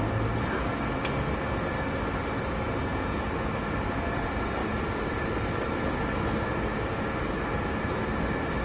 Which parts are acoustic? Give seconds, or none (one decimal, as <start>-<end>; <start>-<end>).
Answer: 0.0-2.9; 3.4-8.6